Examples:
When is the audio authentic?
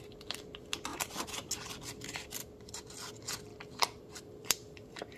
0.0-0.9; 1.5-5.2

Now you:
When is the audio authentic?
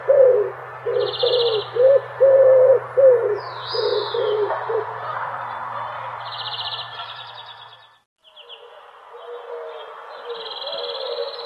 0.0-3.9; 7.3-11.5